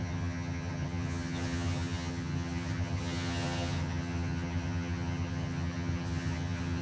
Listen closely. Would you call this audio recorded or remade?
remade